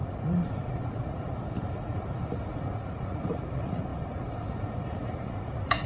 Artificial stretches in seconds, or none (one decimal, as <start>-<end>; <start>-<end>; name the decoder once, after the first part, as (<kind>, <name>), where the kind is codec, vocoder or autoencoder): 0.0-5.9 (vocoder, Vocos)